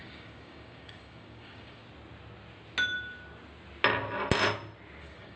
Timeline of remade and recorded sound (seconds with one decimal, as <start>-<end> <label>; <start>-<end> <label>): 0.0-1.8 remade; 1.8-5.0 recorded; 5.0-5.4 remade